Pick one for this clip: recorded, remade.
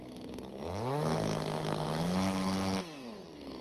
remade